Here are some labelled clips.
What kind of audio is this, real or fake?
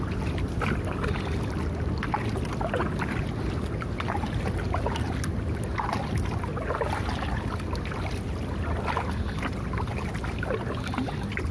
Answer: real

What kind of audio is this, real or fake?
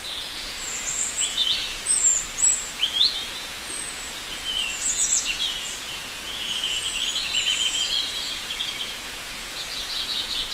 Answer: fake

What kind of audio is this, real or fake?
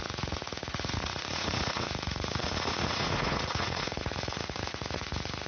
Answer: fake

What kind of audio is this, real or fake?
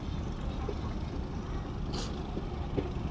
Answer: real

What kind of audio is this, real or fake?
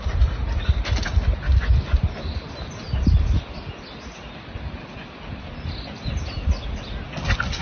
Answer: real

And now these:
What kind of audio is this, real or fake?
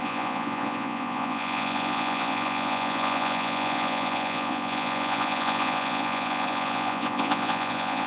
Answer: fake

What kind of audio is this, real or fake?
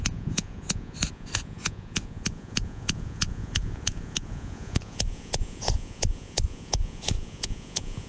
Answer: fake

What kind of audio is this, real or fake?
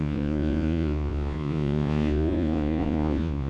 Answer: fake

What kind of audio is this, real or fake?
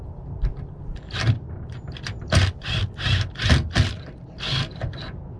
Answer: real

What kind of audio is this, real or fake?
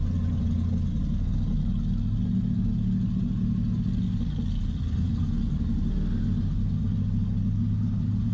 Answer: real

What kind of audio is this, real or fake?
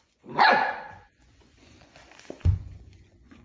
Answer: fake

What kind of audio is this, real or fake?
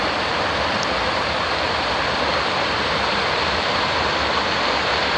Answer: real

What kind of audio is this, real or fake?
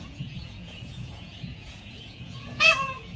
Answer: fake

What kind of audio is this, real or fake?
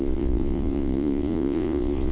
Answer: fake